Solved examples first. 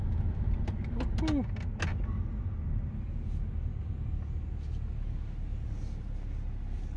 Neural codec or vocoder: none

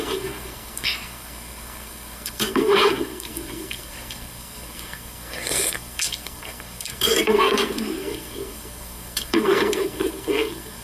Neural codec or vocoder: codec, SNAC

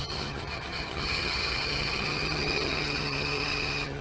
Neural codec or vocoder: vocoder, HiFi-GAN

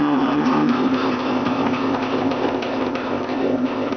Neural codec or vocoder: codec, ZipCodec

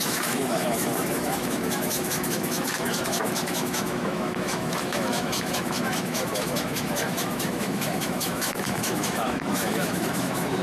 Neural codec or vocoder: autoencoder, DAC-VAE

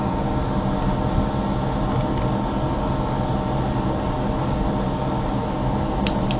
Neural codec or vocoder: none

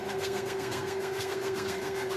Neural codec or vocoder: codec, SNAC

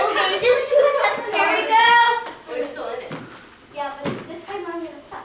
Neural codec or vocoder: none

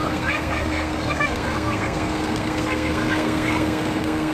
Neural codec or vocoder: codec, SNAC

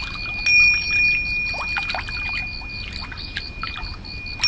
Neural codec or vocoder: none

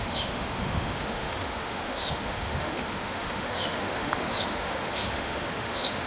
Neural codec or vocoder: autoencoder, DAC-VAE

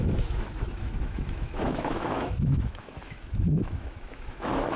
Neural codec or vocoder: autoencoder, DAC-VAE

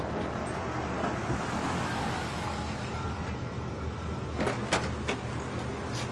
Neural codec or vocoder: none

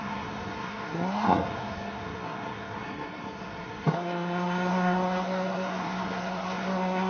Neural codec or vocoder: codec, SNAC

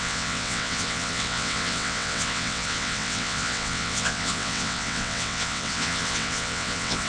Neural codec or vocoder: vocoder, WaveNeXt